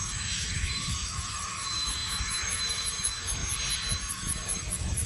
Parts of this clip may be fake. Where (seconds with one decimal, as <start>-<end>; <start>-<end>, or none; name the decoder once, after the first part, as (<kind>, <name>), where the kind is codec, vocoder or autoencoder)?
0.0-3.4 (autoencoder, DAC-VAE); 4.1-5.1